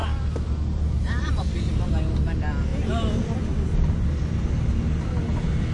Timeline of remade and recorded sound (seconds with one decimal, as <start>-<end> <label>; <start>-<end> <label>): 0.0-2.7 recorded; 2.7-3.4 remade; 3.4-5.7 recorded